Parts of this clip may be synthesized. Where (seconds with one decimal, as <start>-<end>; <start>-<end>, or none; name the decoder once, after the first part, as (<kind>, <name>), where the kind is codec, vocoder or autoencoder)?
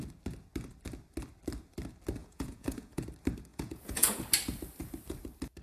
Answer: 2.2-3.0 (vocoder, Vocos); 3.5-4.2